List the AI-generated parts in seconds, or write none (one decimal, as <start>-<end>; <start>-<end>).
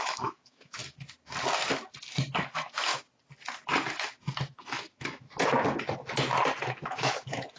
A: 0.0-0.8; 2.4-2.9; 4.5-5.3; 6.6-7.6